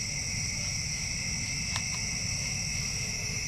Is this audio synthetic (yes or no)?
no